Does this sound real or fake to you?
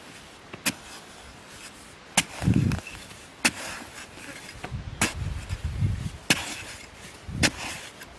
real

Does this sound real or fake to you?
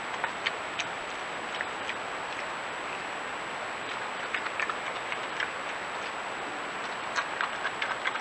real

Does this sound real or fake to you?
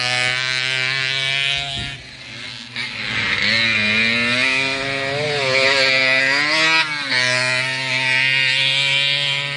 real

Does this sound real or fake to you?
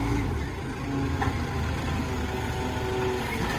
real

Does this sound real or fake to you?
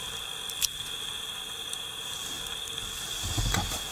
real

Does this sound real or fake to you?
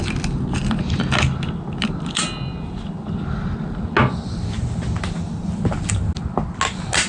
real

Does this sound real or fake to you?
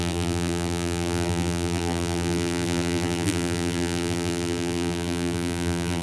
fake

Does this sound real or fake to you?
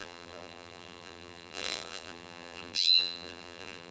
fake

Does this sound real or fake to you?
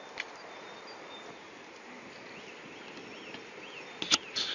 real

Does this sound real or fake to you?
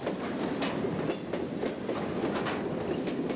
real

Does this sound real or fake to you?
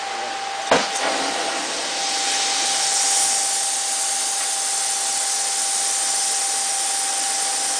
real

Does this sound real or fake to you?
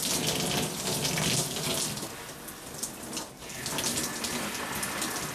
real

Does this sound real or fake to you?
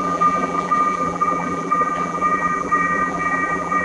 fake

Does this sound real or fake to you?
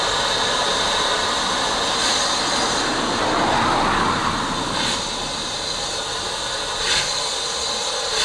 real